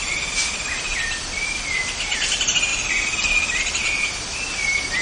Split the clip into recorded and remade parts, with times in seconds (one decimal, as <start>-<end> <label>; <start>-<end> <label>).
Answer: 0.0-5.0 recorded